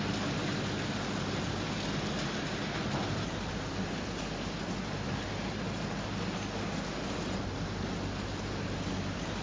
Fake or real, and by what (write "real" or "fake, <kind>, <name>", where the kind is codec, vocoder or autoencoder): real